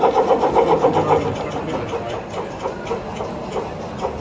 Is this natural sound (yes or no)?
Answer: yes